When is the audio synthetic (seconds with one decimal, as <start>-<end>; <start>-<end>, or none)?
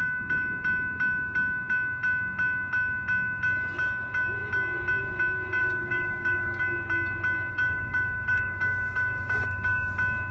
5.6-6.6; 7.5-9.9